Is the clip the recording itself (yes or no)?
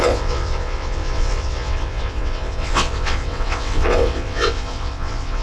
no